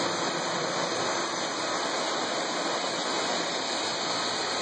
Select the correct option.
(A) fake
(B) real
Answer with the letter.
B